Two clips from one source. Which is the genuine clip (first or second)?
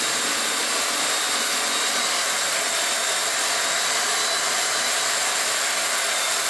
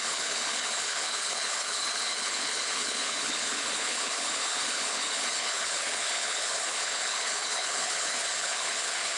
first